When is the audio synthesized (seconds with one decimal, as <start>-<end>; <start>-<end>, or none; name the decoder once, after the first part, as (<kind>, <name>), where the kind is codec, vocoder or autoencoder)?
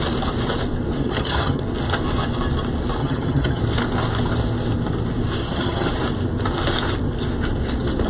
1.0-1.6 (vocoder, HiFi-GAN); 3.0-3.6; 5.4-5.9